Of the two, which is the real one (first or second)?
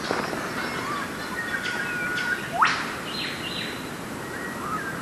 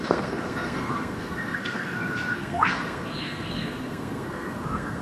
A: first